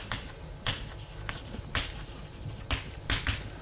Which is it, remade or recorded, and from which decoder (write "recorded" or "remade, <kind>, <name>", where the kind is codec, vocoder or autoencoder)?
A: recorded